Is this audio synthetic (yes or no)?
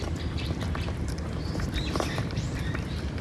yes